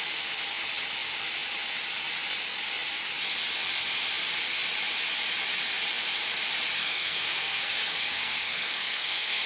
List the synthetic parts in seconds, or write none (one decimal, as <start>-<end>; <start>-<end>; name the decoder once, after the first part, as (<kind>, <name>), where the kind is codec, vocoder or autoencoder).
6.8-9.5 (codec, SNAC)